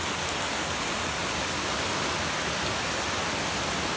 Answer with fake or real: real